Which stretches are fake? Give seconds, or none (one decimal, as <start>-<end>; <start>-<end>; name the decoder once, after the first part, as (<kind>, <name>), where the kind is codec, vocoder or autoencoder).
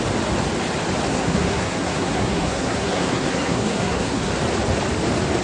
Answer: 1.1-4.3 (codec, SNAC)